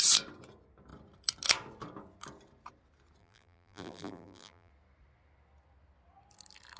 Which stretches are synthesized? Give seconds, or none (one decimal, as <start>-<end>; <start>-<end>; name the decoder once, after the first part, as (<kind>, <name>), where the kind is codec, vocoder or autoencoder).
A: 3.2-4.7 (vocoder, BigVGAN v2)